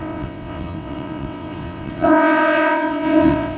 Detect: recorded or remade remade